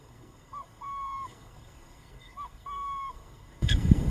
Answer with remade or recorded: remade